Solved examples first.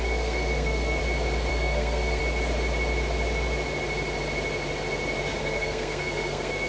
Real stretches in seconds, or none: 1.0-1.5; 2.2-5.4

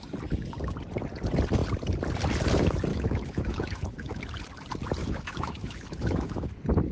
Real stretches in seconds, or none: 0.0-2.9; 4.2-5.0; 6.5-6.9

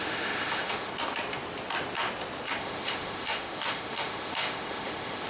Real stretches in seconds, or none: 0.9-2.6

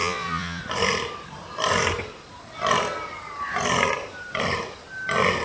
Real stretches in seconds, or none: 0.6-5.4

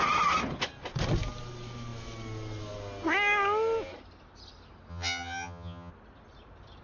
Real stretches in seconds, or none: 0.0-4.9; 5.9-6.8

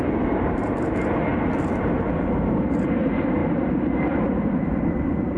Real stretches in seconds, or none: 1.3-2.0

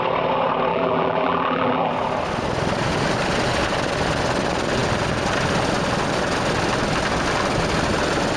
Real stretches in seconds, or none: 0.0-0.7; 1.9-8.4

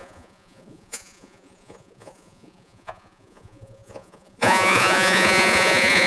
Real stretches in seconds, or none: none